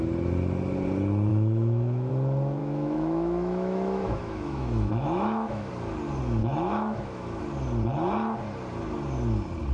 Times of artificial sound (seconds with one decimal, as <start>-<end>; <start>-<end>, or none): 1.3-2.1; 2.6-5.7; 6.4-7.4